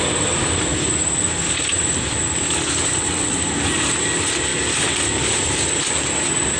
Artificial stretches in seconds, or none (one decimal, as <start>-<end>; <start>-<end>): 2.9-3.4